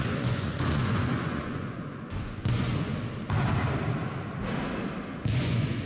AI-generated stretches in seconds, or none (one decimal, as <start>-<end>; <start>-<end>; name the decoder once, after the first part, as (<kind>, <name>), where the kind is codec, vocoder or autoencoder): 0.0-2.9 (vocoder, Vocos); 5.3-5.9